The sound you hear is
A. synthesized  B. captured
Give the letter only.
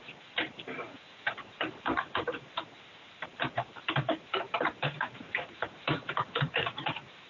A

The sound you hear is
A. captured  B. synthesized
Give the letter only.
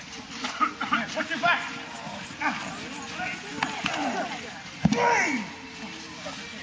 A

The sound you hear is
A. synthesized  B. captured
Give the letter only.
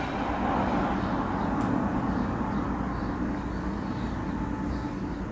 B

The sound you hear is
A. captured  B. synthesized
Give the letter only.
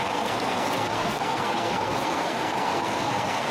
B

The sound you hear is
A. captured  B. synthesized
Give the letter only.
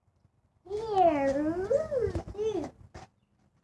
A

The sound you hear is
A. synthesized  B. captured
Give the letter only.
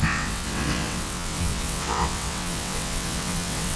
A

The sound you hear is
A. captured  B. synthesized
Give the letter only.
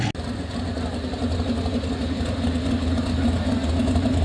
A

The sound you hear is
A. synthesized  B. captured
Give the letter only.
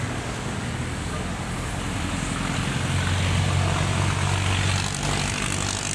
B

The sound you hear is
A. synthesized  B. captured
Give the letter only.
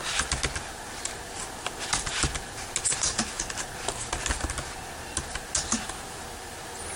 B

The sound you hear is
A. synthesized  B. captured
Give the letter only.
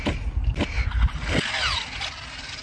B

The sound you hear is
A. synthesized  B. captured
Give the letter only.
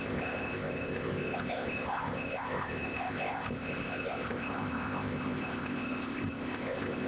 A